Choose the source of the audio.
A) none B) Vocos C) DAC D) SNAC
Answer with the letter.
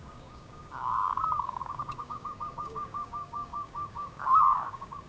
C